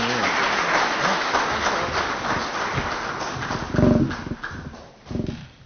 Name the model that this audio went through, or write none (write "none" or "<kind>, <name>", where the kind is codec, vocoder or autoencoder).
none